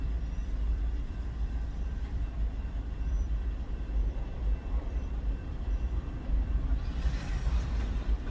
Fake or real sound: fake